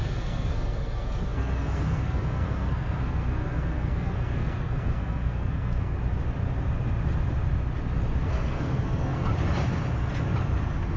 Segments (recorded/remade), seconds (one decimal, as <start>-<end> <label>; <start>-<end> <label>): 0.0-6.0 remade; 6.0-8.2 recorded; 8.2-9.3 remade; 9.3-11.0 recorded